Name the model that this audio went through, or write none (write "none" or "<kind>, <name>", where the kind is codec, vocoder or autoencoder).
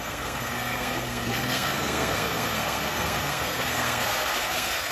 codec, SNAC